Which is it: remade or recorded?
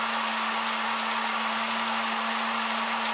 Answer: recorded